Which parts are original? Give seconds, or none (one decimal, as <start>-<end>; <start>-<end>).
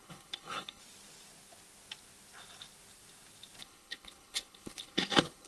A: 0.8-3.6